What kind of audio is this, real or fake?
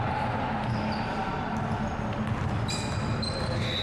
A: real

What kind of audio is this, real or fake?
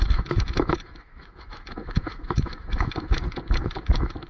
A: fake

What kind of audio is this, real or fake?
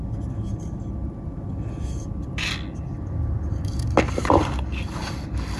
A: real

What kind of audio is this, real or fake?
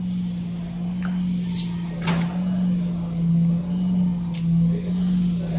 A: real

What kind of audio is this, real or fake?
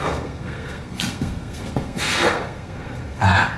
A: fake